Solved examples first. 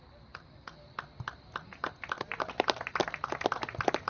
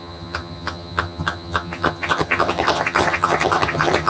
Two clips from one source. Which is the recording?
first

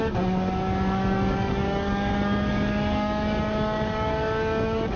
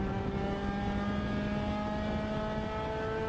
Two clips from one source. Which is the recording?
second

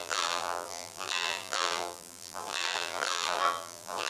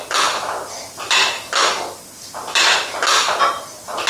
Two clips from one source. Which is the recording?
second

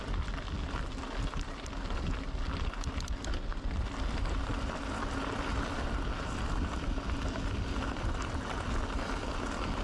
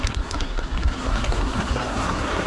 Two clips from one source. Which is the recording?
first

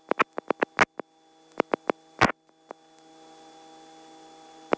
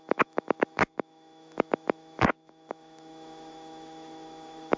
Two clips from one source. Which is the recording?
first